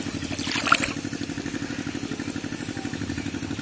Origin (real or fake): real